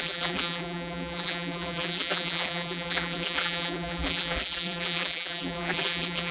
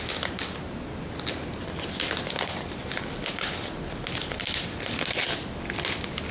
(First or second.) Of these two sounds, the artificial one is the first